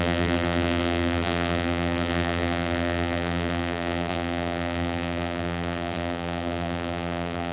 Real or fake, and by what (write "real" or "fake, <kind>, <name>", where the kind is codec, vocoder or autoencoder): fake, vocoder, BigVGAN v2